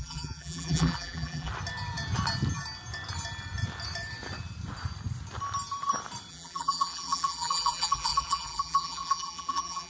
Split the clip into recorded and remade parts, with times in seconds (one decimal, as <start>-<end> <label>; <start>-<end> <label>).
0.0-1.5 remade; 1.5-6.3 recorded; 6.3-9.9 remade